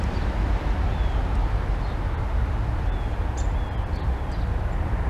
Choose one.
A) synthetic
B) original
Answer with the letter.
B